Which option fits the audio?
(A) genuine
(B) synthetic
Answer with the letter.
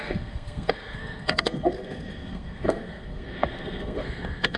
B